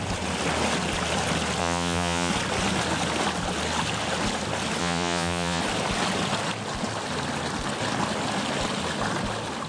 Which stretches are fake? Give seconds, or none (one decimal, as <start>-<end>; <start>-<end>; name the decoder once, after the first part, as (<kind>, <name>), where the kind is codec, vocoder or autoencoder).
1.6-2.3 (vocoder, Vocos); 4.8-5.6